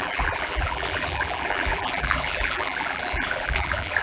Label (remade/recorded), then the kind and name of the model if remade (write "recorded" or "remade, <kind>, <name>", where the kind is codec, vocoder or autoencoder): remade, vocoder, BigVGAN v2